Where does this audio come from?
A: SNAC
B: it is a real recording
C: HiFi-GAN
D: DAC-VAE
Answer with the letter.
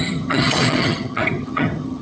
C